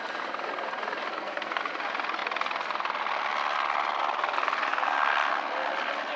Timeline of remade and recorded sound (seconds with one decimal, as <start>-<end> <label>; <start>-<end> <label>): 0.0-1.1 recorded; 1.1-1.6 remade; 1.6-6.2 recorded